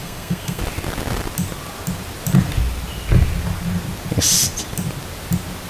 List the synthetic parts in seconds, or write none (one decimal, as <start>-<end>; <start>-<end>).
0.0-0.6